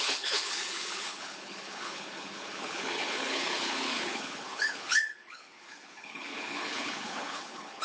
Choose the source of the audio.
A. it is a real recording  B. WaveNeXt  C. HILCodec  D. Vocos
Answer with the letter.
C